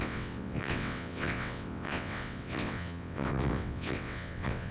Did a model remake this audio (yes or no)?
yes